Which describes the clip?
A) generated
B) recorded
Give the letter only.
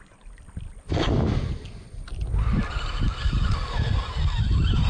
B